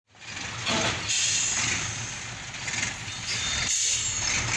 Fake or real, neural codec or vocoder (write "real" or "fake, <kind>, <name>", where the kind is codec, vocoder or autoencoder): real